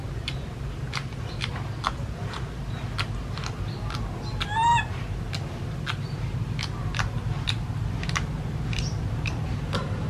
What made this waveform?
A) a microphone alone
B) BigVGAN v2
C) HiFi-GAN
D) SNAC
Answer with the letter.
A